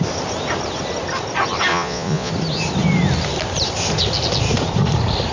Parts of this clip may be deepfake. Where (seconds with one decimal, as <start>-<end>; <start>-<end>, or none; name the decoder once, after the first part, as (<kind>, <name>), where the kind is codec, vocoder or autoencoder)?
1.7-2.3 (vocoder, Vocos)